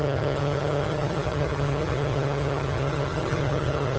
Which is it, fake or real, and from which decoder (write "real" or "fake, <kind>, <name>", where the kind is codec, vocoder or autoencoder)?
fake, vocoder, HiFi-GAN